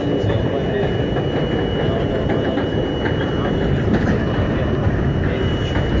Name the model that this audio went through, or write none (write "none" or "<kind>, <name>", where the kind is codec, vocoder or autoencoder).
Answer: none